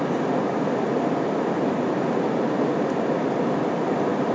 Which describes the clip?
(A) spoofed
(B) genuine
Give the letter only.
B